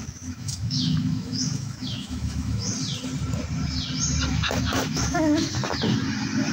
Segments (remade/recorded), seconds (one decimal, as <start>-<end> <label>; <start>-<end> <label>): 0.0-2.7 remade; 2.7-4.3 recorded; 4.3-5.6 remade; 5.6-6.5 recorded